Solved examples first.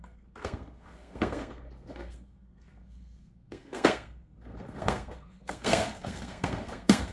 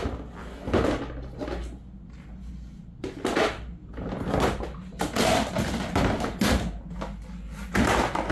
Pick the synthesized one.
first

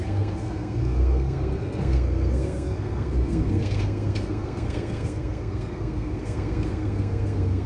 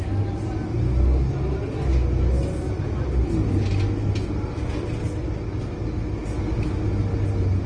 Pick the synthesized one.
first